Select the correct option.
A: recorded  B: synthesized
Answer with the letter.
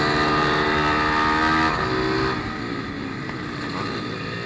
A